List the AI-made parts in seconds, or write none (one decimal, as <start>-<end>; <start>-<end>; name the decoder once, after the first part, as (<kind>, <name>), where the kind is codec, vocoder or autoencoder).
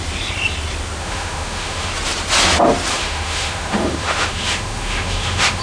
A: 1.0-1.9 (autoencoder, DAC-VAE); 2.9-5.6